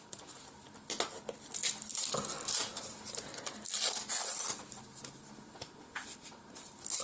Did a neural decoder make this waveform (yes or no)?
no